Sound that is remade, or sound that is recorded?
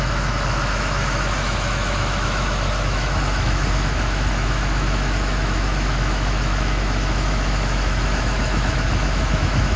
remade